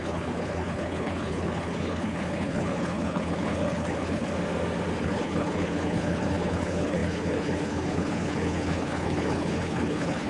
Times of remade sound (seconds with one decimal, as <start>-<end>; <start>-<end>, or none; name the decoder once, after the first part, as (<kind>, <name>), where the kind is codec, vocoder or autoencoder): 0.0-4.3 (codec, HILCodec); 5.0-10.3